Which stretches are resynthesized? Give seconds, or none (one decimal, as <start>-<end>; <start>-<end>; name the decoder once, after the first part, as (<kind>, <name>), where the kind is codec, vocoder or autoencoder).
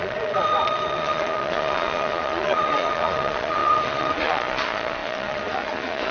0.0-6.1 (vocoder, Vocos)